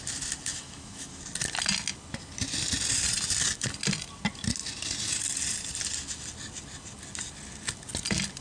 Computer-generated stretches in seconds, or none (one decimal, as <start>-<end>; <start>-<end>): 0.5-1.2